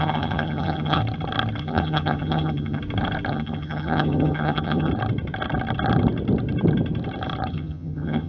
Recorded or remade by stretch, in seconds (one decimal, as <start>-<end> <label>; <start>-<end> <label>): 0.0-1.0 remade; 1.0-1.6 recorded; 1.6-2.8 remade; 2.8-3.3 recorded; 3.3-4.9 remade; 4.9-7.5 recorded; 7.5-8.3 remade